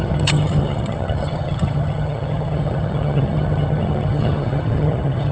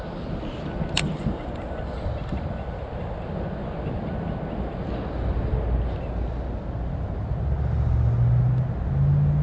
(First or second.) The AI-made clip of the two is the first